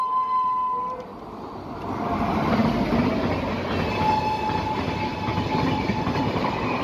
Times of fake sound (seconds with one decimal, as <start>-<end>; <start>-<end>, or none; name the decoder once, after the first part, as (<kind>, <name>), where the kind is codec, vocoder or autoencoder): 5.3-6.8 (vocoder, BigVGAN v2)